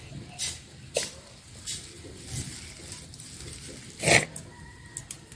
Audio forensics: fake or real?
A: real